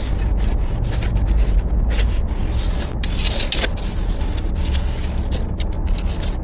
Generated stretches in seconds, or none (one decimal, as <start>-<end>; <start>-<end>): none